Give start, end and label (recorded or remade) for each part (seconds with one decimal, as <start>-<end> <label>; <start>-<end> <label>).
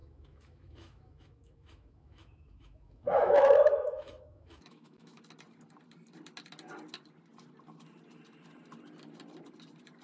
0.0-5.2 remade; 5.2-10.0 recorded